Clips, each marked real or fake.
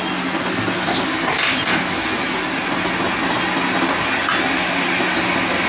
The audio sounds real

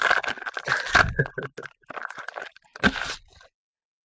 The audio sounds real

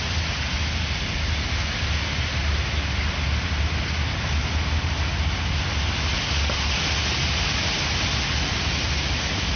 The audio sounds real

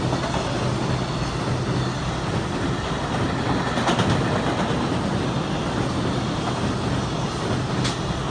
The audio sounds real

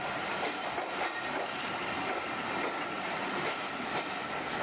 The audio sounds real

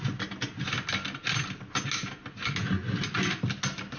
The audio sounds real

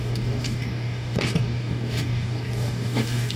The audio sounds fake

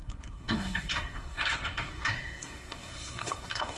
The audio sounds fake